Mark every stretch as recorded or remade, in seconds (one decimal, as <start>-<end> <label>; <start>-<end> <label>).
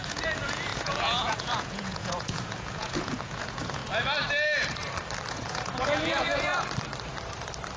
0.0-3.8 remade; 3.8-5.3 recorded; 5.3-6.5 remade; 6.5-7.8 recorded